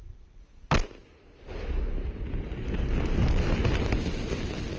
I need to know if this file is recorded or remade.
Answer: recorded